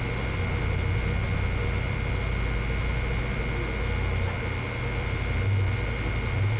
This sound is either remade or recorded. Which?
recorded